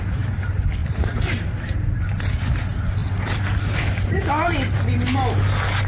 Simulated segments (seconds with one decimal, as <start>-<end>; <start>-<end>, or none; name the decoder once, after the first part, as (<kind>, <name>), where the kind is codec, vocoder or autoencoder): 0.8-2.2 (vocoder, BigVGAN v2); 3.0-4.3